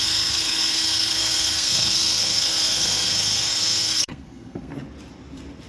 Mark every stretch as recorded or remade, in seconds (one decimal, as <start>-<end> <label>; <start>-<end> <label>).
0.0-4.7 remade; 4.7-5.7 recorded